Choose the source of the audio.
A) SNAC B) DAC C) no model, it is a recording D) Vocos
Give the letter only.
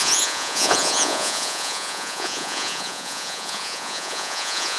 D